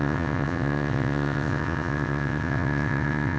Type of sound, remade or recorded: remade